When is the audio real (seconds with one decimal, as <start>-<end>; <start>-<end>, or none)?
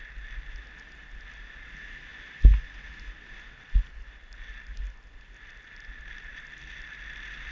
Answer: 0.0-7.5